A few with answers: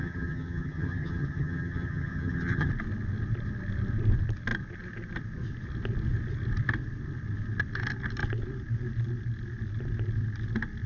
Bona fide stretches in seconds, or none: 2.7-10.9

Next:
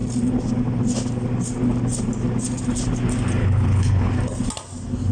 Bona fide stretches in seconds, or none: 0.0-3.4; 4.1-5.1

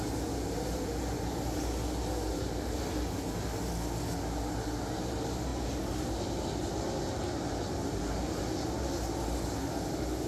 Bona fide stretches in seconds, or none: 0.0-10.3

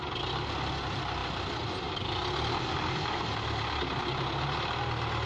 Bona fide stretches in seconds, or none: 0.0-5.3

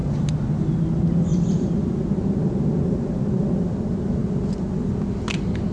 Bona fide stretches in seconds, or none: 0.0-1.3; 2.4-5.7